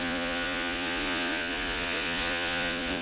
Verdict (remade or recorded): remade